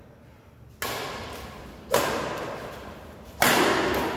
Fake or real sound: real